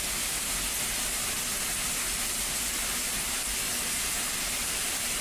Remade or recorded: recorded